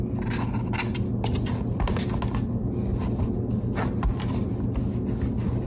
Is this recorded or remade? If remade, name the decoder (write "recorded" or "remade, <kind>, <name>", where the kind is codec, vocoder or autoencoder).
recorded